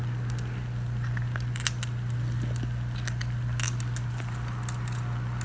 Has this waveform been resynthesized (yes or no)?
no